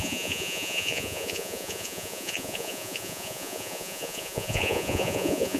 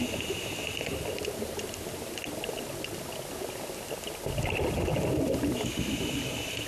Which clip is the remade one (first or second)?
first